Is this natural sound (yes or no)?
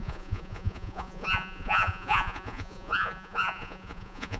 no